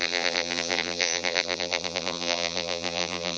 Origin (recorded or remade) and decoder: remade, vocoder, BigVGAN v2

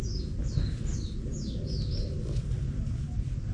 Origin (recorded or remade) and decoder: recorded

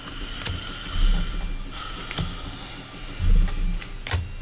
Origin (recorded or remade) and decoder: recorded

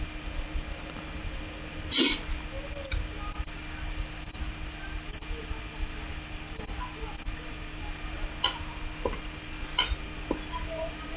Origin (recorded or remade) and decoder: recorded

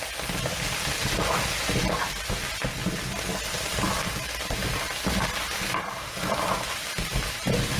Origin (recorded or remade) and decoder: recorded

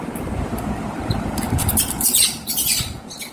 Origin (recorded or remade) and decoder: remade, vocoder, BigVGAN v2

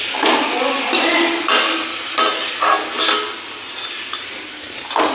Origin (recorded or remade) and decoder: recorded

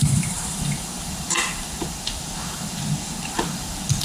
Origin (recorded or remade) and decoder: remade, vocoder, BigVGAN v2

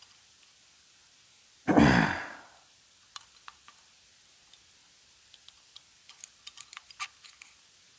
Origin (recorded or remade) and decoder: remade, vocoder, BigVGAN v2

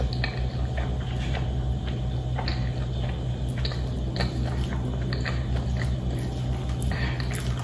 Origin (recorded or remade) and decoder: recorded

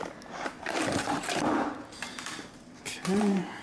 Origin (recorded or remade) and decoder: remade, vocoder, BigVGAN v2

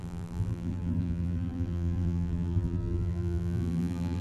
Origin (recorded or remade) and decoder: remade, vocoder, BigVGAN v2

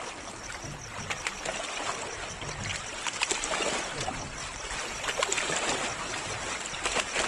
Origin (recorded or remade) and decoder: recorded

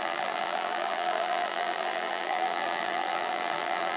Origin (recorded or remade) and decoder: remade, vocoder, BigVGAN v2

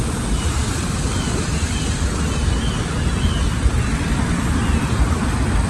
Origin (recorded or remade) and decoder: recorded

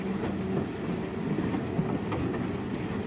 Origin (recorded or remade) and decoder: recorded